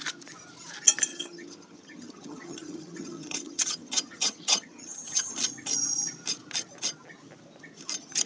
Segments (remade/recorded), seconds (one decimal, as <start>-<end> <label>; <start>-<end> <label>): 0.0-1.1 recorded; 1.1-5.3 remade; 5.3-8.3 recorded